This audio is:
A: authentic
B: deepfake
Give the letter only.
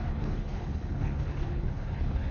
B